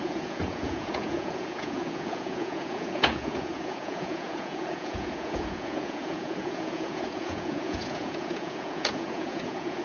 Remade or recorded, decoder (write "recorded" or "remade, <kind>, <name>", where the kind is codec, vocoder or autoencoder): remade, vocoder, Vocos